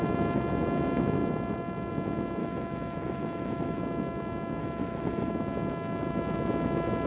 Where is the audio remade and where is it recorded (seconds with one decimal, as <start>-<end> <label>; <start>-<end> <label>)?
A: 0.0-2.4 recorded; 2.4-3.8 remade; 3.8-4.6 recorded; 4.6-5.3 remade; 5.3-7.1 recorded